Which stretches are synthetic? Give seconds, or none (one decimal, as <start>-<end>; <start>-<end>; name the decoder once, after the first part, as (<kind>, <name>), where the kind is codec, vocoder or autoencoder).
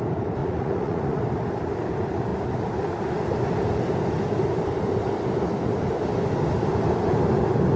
0.4-1.2 (vocoder, Vocos)